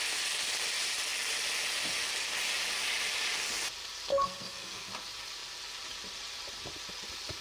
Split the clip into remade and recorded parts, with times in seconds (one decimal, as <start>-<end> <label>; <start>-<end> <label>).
0.0-4.1 recorded; 4.1-4.9 remade; 4.9-7.4 recorded